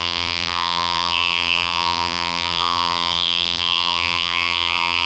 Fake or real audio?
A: fake